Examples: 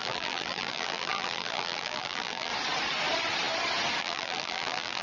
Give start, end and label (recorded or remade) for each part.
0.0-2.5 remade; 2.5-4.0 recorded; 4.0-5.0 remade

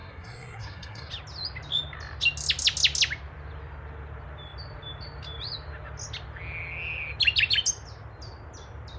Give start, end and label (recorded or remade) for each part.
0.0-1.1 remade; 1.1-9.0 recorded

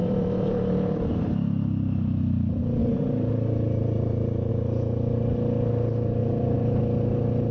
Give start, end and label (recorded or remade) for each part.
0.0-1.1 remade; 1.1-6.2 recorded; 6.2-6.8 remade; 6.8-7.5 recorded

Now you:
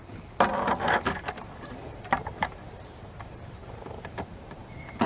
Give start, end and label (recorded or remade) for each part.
0.0-1.8 recorded; 1.8-5.1 remade

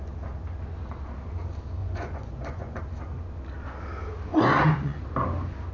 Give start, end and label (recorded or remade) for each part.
0.0-1.8 recorded; 1.8-2.8 remade; 2.8-4.3 recorded; 4.3-5.0 remade; 5.0-5.7 recorded